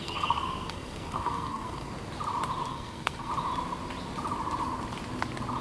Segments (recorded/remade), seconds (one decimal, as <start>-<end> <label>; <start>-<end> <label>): 0.0-1.9 remade; 1.9-2.7 recorded; 2.7-3.3 remade; 3.3-5.6 recorded